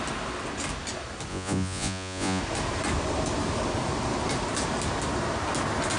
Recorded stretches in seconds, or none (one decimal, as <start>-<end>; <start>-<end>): 0.0-1.3; 2.4-6.0